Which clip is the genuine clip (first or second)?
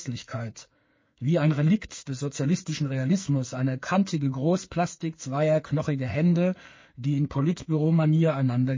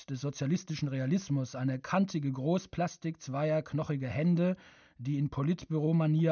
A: second